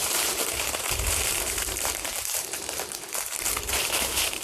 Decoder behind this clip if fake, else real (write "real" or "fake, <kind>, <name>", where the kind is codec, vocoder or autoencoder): fake, vocoder, BigVGAN v2